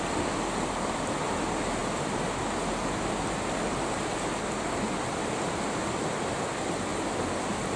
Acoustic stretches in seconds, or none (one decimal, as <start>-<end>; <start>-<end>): 0.0-7.8